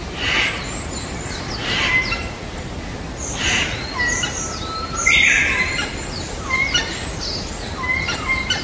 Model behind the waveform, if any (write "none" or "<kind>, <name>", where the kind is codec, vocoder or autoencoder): none